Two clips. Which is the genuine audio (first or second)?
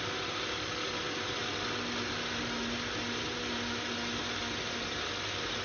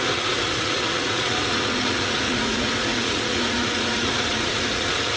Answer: first